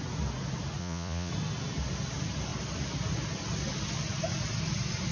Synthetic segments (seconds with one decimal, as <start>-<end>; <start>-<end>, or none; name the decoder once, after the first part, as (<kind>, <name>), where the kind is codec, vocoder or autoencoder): 0.8-1.3 (vocoder, Vocos)